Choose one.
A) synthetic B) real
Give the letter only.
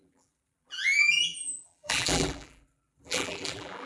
A